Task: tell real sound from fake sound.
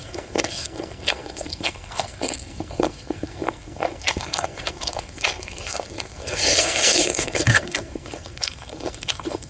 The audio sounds fake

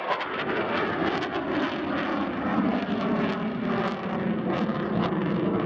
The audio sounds real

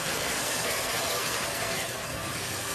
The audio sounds fake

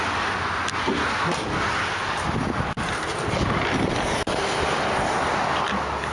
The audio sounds real